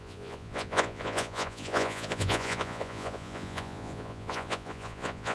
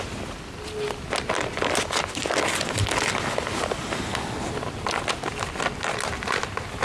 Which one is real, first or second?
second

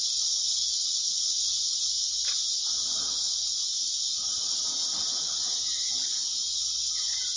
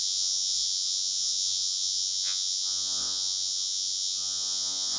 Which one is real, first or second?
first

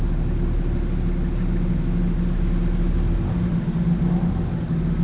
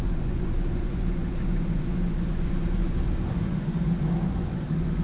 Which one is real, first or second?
first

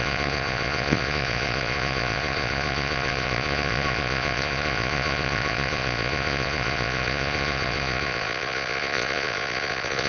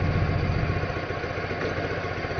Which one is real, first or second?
second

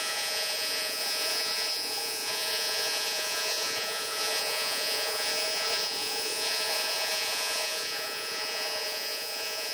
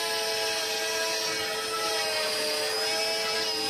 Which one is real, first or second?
second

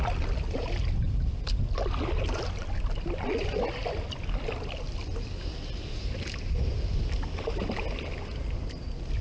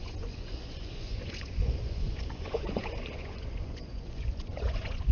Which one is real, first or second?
first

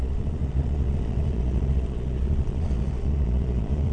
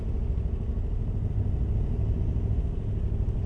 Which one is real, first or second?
second